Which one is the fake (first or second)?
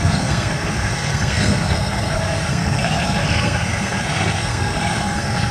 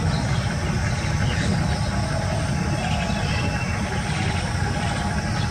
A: first